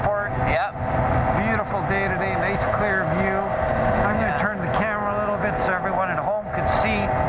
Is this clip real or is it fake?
real